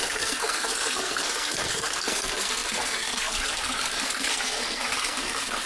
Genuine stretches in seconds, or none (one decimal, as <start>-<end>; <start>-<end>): none